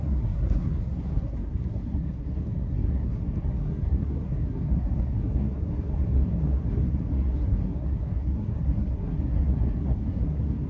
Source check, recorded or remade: remade